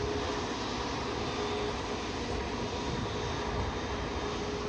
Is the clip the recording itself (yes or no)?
yes